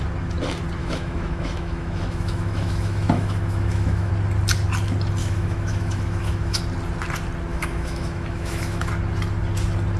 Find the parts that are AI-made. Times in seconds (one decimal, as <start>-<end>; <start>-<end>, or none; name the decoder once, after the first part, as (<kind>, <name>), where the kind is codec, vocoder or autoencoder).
0.8-4.1 (autoencoder, DAC-VAE); 5.2-6.6; 7.5-8.9